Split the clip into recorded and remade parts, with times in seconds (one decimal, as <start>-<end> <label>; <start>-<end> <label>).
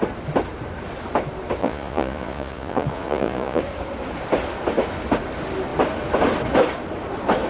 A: 0.0-1.6 recorded; 1.6-3.6 remade; 3.6-7.5 recorded